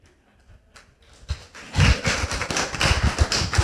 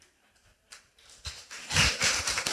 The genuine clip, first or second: first